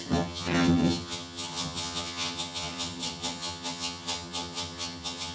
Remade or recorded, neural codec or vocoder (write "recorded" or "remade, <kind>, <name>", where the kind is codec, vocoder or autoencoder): remade, vocoder, HiFi-GAN